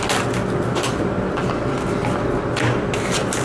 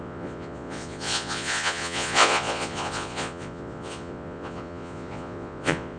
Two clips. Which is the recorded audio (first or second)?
first